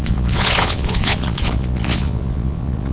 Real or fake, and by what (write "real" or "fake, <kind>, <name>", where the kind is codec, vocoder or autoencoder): fake, vocoder, Vocos